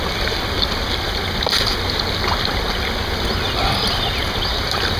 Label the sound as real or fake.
real